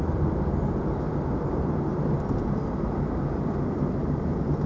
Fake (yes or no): no